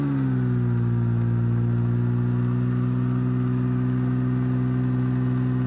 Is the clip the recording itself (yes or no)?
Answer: yes